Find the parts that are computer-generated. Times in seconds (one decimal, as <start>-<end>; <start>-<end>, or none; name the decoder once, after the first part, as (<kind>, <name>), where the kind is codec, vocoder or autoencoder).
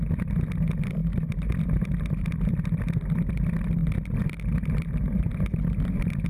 none